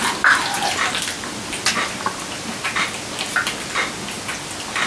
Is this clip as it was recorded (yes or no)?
yes